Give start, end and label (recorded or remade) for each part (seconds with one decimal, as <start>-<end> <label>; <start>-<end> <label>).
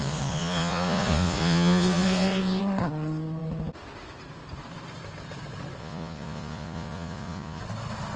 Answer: 0.0-2.6 remade; 2.6-5.8 recorded; 5.8-7.6 remade; 7.6-8.2 recorded